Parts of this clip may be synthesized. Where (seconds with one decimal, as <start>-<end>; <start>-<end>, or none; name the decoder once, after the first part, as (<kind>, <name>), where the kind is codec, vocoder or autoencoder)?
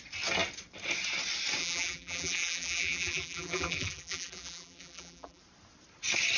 1.6-5.4 (vocoder, BigVGAN v2)